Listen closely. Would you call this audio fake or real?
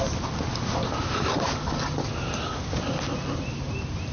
real